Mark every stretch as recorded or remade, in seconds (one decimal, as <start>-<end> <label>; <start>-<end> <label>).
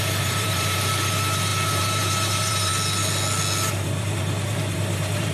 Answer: 0.0-2.7 remade; 2.7-3.7 recorded; 3.7-5.3 remade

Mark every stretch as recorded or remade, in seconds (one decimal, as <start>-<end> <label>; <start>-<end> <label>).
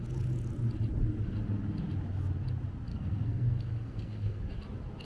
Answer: 0.0-2.9 recorded; 2.9-4.4 remade; 4.4-5.0 recorded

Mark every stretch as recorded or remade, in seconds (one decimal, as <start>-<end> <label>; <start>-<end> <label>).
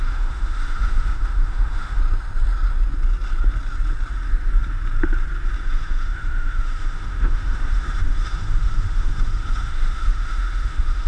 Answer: 0.0-2.0 remade; 2.0-5.6 recorded; 5.6-11.1 remade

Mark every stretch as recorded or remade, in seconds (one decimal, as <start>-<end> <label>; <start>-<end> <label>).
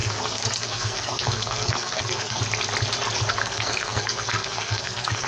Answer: 0.0-2.4 remade; 2.4-3.3 recorded; 3.3-5.3 remade